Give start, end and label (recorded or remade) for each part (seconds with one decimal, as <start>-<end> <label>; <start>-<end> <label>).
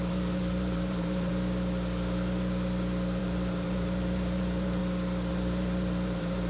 0.0-1.3 remade; 1.3-3.2 recorded; 3.2-4.8 remade; 4.8-5.3 recorded; 5.3-6.5 remade